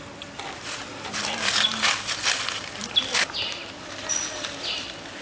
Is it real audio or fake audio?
real